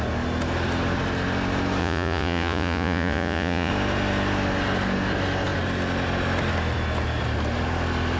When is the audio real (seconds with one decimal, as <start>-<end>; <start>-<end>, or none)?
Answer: 0.0-1.8; 3.7-8.2